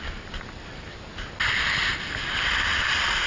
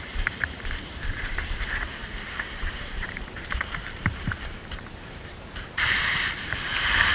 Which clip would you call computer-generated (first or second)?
second